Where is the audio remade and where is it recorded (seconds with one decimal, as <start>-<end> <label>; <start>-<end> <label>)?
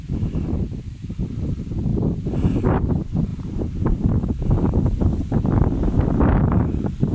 0.0-3.3 recorded; 3.3-4.1 remade; 4.1-7.1 recorded